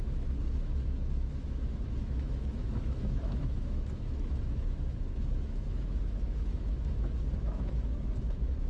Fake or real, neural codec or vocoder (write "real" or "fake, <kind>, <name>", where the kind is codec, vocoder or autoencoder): fake, autoencoder, DAC-VAE